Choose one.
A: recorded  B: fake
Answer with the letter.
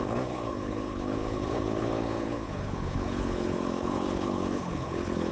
B